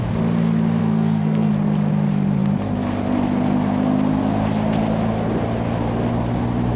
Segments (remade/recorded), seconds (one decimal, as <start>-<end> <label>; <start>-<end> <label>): 0.0-0.8 recorded; 0.8-1.5 remade; 1.5-6.8 recorded

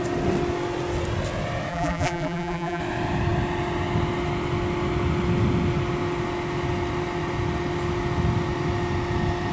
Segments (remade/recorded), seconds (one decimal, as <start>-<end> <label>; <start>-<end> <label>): 0.0-1.7 recorded; 1.7-2.8 remade; 2.8-9.5 recorded

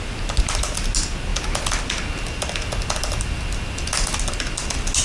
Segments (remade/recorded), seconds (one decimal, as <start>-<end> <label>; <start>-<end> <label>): 0.0-5.0 recorded

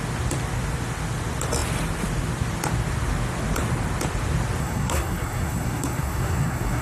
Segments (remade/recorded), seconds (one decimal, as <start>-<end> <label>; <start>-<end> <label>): 0.0-4.6 recorded; 4.6-6.8 remade

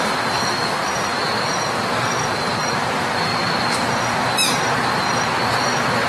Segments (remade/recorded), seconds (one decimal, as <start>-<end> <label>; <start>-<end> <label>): 0.0-6.1 remade